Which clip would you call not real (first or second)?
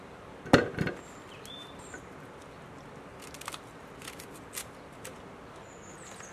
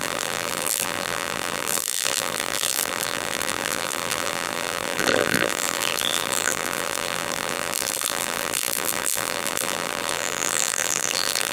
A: second